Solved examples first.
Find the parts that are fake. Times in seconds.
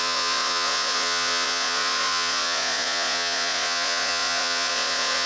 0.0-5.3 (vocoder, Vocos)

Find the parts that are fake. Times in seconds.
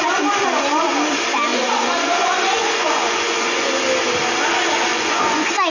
1.5-3.7 (vocoder, Vocos); 4.9-5.7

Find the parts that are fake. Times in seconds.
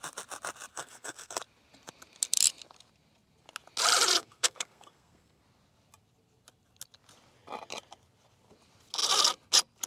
0.7-1.4 (codec, SNAC); 4.2-5.4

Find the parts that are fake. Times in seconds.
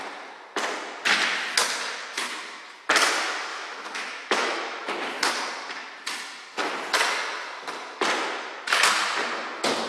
3.5-4.9 (autoencoder, DAC-VAE)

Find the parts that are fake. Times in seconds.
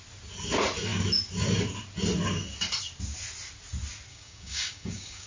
4.1-5.3 (codec, DAC)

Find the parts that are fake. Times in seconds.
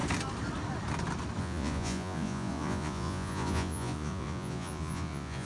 1.4-5.5 (vocoder, Vocos)